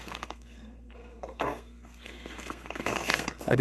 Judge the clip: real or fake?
fake